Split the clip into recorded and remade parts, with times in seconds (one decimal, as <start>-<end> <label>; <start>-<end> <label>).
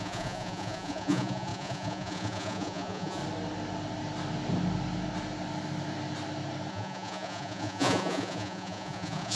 0.0-3.2 remade; 3.2-6.7 recorded; 6.7-9.4 remade